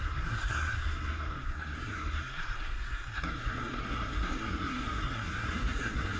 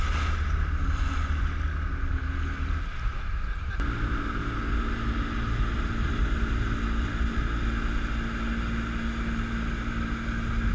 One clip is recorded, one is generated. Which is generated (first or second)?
first